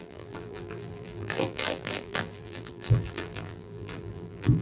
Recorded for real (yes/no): no